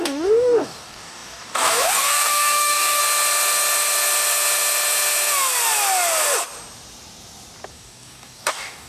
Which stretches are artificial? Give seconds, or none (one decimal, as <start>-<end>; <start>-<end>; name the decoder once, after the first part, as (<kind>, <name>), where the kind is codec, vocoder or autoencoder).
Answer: 0.0-3.0 (codec, DAC); 7.7-8.9